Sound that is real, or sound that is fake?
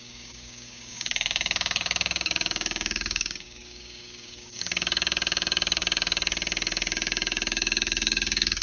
fake